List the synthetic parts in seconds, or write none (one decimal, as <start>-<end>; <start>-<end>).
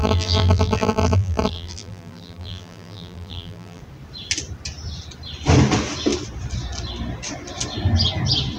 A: 0.0-3.8